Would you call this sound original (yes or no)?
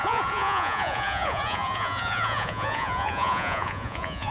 no